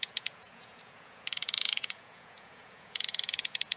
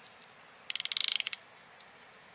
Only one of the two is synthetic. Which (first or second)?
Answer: first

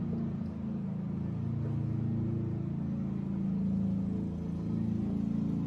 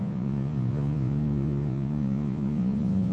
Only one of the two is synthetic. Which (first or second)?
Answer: second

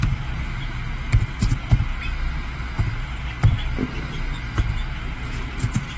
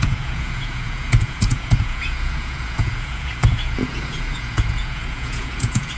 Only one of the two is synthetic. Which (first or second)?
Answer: second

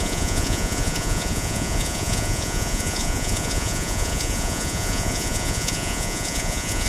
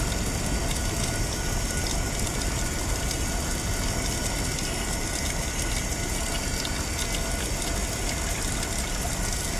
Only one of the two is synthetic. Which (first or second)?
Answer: first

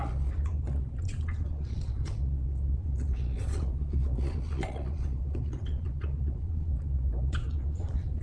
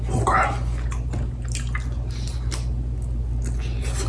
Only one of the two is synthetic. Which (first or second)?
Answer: first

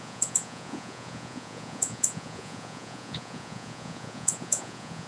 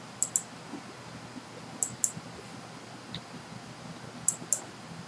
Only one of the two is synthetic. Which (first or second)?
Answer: first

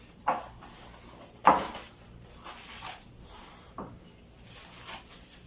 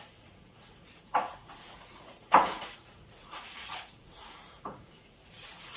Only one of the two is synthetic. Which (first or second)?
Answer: second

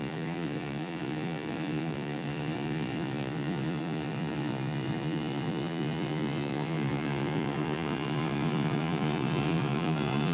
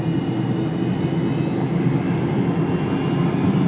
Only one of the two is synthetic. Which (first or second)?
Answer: first